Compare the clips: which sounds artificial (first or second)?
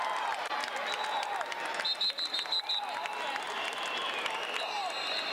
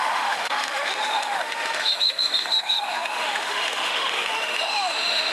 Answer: second